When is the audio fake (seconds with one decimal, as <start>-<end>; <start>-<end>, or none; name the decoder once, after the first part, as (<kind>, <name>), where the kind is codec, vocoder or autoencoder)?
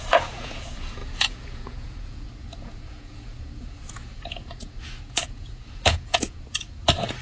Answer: 0.0-7.2 (vocoder, Vocos)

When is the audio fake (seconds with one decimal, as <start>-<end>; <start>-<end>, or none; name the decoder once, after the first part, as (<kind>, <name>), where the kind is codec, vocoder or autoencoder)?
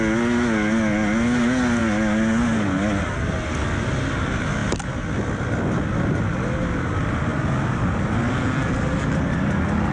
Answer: none